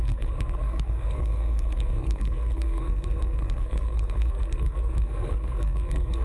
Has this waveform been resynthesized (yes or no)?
yes